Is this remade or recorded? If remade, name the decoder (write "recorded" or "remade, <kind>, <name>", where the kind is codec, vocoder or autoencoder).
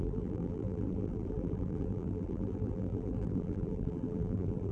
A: remade, vocoder, BigVGAN v2